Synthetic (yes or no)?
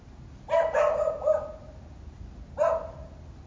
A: no